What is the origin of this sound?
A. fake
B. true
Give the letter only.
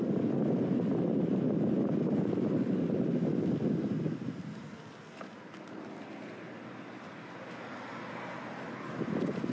B